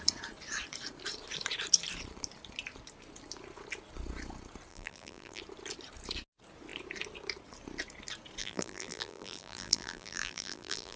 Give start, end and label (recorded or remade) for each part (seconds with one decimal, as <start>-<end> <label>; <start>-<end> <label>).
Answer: 0.0-4.7 recorded; 4.7-5.4 remade; 5.4-8.4 recorded; 8.4-11.0 remade